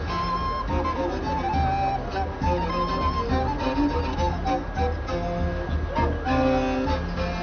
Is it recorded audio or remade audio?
recorded